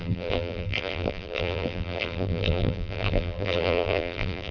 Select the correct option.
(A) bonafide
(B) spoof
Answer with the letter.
B